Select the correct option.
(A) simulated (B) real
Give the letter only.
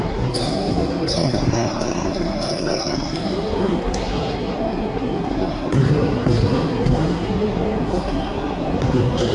A